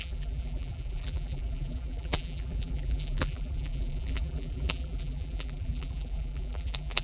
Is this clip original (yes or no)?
no